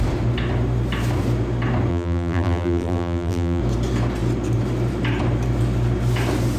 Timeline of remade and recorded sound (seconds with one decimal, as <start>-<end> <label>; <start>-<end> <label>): 0.0-1.9 recorded; 1.9-3.6 remade; 3.6-6.6 recorded